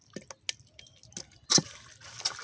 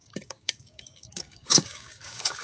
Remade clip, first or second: second